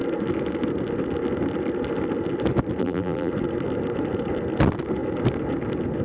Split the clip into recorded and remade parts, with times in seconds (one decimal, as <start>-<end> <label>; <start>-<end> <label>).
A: 0.0-2.8 recorded; 2.8-3.3 remade; 3.3-6.0 recorded